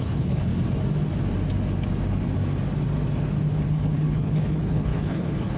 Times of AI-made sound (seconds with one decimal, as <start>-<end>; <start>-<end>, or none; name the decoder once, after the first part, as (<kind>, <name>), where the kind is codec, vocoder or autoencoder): 0.0-0.5 (codec, HILCodec); 3.7-5.6